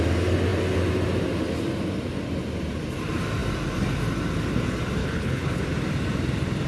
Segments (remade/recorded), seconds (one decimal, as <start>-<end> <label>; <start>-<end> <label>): 0.0-5.0 recorded; 5.0-5.6 remade; 5.6-6.7 recorded